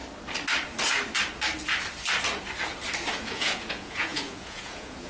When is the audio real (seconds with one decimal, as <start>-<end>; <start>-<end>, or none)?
0.0-3.1